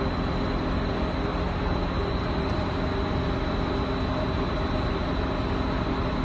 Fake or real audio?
real